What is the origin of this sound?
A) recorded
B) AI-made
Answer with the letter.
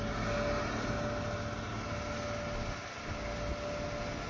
A